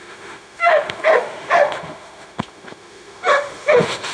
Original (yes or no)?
no